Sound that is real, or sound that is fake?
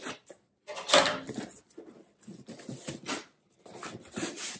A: real